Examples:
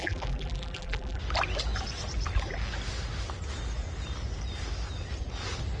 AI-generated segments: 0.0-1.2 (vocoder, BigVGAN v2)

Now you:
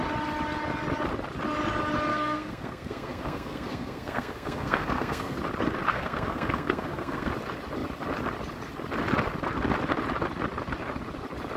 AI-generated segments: 2.1-5.4 (codec, SNAC); 5.9-7.3

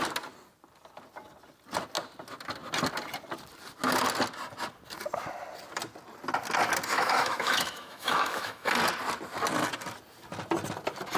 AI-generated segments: 6.9-8.7 (autoencoder, DAC-VAE)

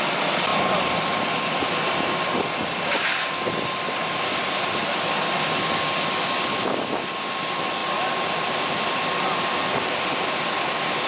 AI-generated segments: none

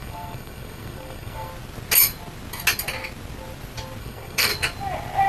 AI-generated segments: 0.0-1.5 (codec, SNAC); 4.0-4.5

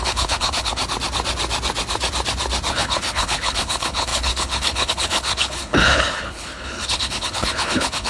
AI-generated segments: 0.0-0.8 (codec, HILCodec); 2.7-8.1

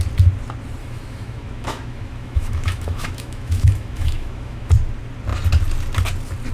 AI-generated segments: 0.8-4.7 (autoencoder, DAC-VAE)

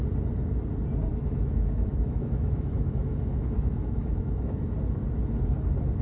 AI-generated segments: 1.1-4.7 (autoencoder, DAC-VAE)